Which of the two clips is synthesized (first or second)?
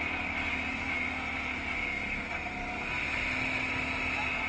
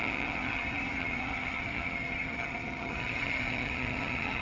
second